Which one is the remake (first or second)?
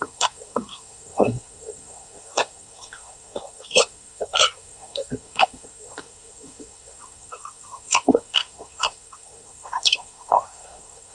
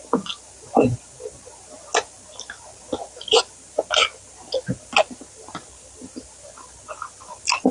first